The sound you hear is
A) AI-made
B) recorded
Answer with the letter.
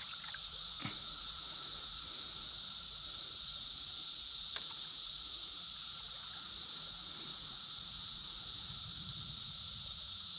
A